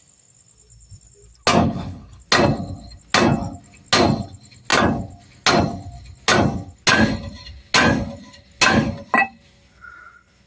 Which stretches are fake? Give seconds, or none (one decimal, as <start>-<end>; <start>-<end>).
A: 1.6-2.2